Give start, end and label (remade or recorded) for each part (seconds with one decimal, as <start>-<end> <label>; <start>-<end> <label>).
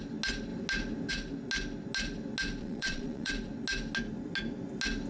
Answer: 0.0-2.6 recorded; 2.6-3.3 remade; 3.3-5.1 recorded